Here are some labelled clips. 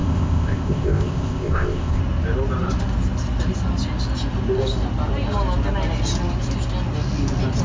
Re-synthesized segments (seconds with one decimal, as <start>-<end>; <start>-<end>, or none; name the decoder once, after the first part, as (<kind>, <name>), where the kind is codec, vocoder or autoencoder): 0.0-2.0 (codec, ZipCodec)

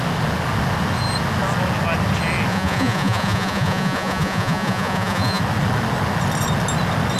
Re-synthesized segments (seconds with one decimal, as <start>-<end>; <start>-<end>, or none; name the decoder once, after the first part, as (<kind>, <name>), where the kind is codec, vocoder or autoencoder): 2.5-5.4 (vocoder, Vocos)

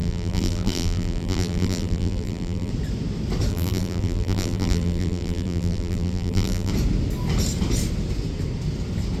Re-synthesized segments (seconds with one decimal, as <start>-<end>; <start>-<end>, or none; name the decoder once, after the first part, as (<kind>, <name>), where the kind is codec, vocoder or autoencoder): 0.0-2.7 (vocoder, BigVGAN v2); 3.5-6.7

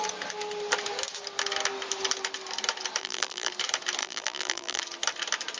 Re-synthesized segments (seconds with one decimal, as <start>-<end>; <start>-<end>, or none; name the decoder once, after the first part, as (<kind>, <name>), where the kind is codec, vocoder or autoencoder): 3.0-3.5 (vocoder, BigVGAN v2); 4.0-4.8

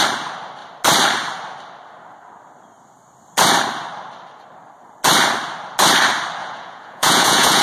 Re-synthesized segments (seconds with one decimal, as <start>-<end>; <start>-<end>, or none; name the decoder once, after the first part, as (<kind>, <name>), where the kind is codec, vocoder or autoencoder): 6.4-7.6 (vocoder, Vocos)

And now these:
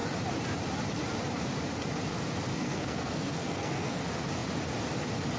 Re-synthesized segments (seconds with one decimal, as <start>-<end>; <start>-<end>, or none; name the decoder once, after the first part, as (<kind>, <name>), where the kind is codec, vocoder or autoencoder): 2.5-4.0 (codec, SNAC)

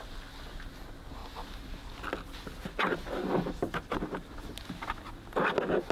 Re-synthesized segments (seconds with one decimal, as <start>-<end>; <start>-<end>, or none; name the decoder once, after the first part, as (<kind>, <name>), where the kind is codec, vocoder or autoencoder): none